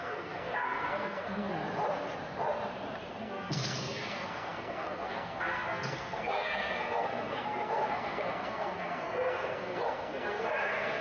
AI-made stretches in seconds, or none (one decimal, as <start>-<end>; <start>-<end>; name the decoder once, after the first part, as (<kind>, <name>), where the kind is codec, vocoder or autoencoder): 0.0-1.5 (codec, SNAC); 3.1-11.0